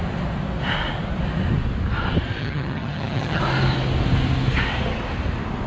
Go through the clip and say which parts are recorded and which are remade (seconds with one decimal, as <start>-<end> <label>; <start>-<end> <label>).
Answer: 0.0-2.4 recorded; 2.4-3.4 remade; 3.4-5.7 recorded